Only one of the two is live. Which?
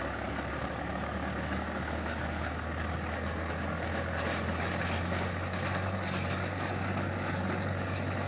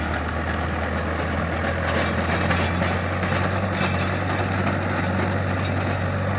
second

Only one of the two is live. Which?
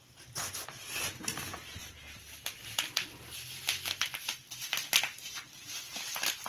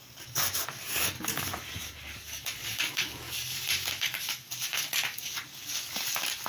first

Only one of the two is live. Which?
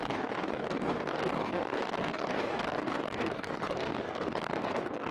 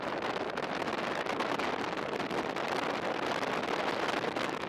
second